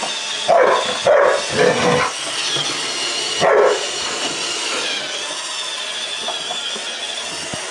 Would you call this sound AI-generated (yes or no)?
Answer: no